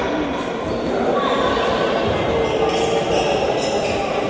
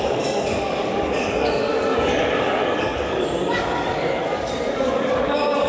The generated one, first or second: second